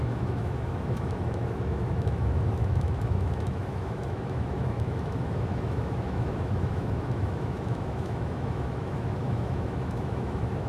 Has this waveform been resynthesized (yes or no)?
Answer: yes